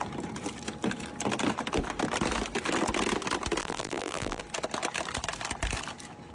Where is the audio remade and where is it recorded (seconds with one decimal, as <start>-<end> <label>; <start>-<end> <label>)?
0.0-3.6 recorded; 3.6-4.4 remade; 4.4-6.3 recorded